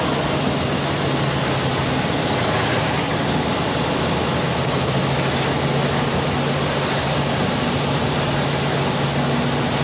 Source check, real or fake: real